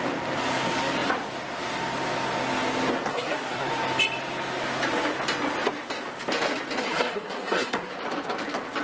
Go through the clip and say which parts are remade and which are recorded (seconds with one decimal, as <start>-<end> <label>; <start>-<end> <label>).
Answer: 0.0-3.1 recorded; 3.1-3.7 remade; 3.7-6.8 recorded; 6.8-7.9 remade; 7.9-8.8 recorded